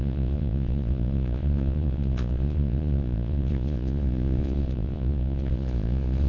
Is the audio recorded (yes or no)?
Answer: no